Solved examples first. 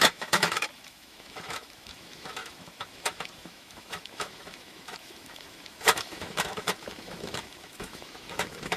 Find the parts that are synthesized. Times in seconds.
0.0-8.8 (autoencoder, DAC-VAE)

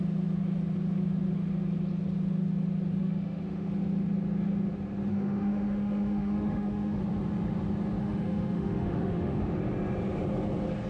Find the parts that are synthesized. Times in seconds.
3.0-3.7 (autoencoder, DAC-VAE); 5.1-7.0; 8.0-9.4

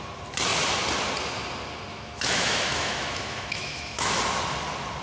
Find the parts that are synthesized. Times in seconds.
1.9-4.2 (autoencoder, DAC-VAE)

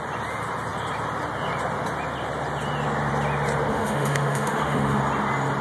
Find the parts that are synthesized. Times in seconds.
3.7-5.0 (autoencoder, DAC-VAE)

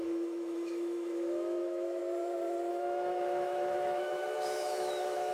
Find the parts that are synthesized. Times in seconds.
0.0-2.0 (autoencoder, DAC-VAE); 2.7-5.3

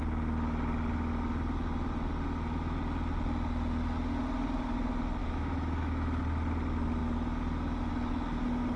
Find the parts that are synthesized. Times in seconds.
5.2-6.2 (autoencoder, DAC-VAE)